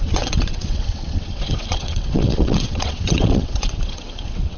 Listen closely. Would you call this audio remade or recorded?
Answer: remade